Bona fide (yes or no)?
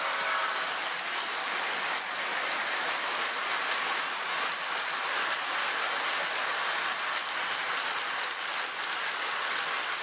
yes